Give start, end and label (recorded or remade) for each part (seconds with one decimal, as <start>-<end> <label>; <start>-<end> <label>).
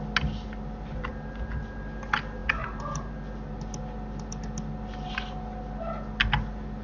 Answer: 0.0-6.8 recorded